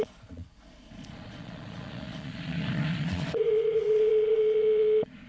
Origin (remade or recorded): remade